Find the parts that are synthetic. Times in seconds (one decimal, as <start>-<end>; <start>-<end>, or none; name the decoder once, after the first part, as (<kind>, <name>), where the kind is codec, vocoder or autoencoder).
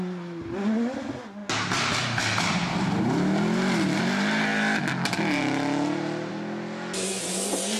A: none